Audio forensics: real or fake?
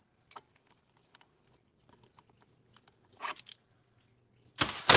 real